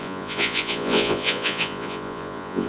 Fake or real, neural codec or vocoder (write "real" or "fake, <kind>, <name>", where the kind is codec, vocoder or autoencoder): fake, vocoder, Vocos